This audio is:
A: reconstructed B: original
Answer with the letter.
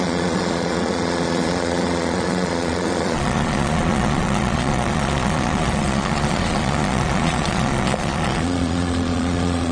A